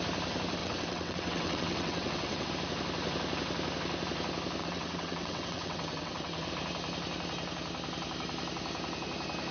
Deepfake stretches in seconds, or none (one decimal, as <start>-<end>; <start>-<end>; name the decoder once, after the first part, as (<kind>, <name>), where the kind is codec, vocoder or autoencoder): 0.6-2.5 (vocoder, WaveNeXt); 4.6-6.5